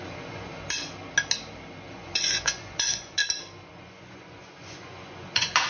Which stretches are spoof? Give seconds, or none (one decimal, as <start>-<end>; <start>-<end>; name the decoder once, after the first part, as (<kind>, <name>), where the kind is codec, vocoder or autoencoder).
0.0-0.5 (vocoder, Vocos); 1.9-3.2; 3.7-5.7